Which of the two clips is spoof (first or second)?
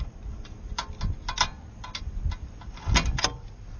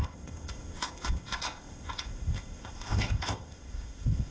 second